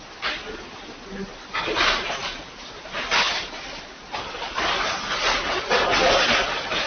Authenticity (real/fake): real